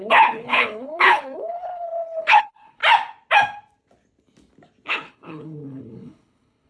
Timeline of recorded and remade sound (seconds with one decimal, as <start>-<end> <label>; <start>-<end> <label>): 0.0-2.8 remade; 2.8-4.9 recorded; 4.9-6.7 remade